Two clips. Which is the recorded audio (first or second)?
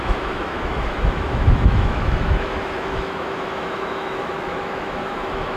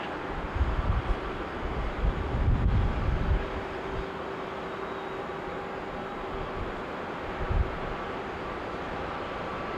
second